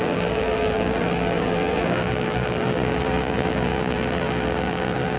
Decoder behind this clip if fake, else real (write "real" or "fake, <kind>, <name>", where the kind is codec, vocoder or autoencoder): fake, vocoder, BigVGAN v2